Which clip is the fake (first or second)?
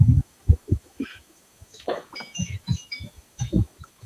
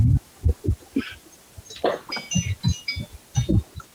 first